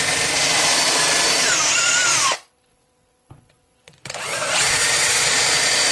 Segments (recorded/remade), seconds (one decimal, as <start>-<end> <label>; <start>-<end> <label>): 0.0-2.1 recorded; 2.1-5.9 remade